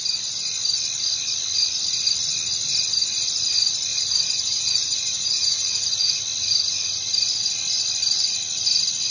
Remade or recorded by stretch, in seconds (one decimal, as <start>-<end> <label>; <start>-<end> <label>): 0.0-3.9 recorded; 3.9-6.2 remade; 6.2-9.1 recorded